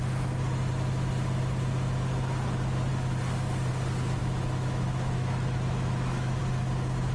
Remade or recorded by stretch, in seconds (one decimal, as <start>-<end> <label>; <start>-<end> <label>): 0.0-4.2 recorded; 4.2-6.4 remade; 6.4-7.1 recorded